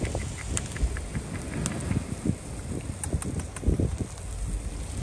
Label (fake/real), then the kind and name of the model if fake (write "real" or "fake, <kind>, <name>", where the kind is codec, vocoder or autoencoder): real